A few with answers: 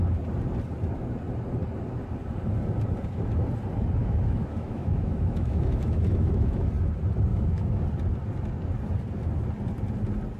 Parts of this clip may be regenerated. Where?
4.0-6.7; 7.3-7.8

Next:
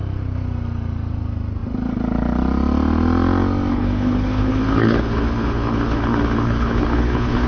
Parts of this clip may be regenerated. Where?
3.7-7.5

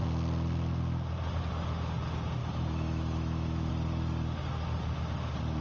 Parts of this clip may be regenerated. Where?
2.4-3.7

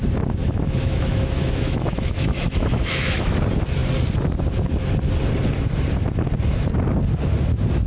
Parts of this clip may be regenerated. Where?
0.4-3.3